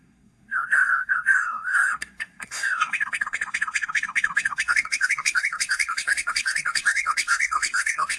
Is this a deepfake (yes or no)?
yes